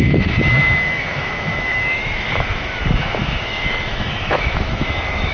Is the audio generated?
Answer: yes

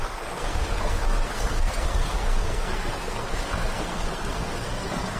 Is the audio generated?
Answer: yes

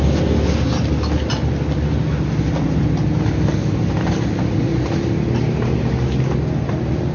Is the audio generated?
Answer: no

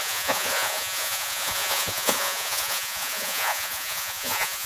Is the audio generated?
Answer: yes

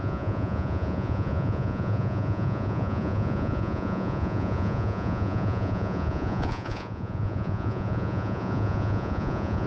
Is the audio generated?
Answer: yes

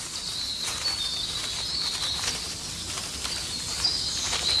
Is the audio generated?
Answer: no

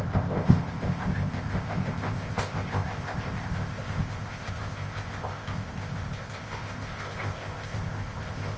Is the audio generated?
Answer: yes